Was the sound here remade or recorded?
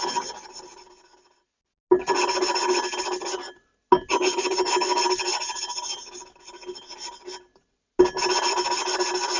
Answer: recorded